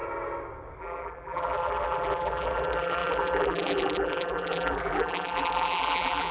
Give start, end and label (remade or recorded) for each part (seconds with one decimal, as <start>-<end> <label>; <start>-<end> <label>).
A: 0.0-0.8 recorded; 0.8-6.3 remade